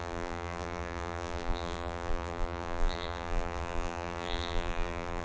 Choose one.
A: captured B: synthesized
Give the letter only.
B